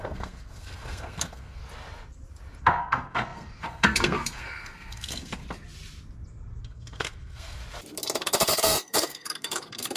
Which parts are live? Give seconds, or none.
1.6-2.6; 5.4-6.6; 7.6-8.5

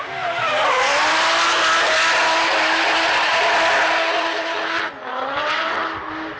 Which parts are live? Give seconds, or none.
0.0-5.1; 5.8-6.4

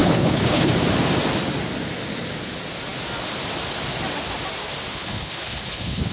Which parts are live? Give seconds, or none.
0.7-4.9

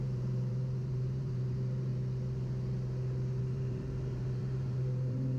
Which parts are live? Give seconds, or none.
1.9-3.4